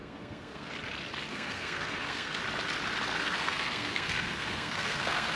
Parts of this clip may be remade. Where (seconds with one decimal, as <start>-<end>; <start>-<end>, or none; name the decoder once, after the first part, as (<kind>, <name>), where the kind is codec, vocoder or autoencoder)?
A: 0.0-0.7 (codec, SNAC); 1.3-2.4; 3.1-5.4

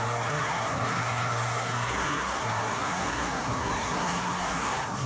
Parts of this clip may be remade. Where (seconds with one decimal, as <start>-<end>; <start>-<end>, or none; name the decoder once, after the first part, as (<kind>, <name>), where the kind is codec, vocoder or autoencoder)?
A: 0.0-5.1 (codec, SNAC)